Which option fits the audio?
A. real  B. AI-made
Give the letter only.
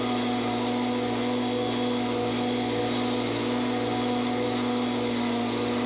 A